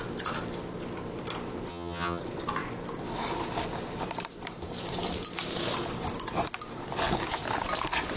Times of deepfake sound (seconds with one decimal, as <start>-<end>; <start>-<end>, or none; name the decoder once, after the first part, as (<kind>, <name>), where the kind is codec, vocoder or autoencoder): 1.7-2.2 (vocoder, HiFi-GAN)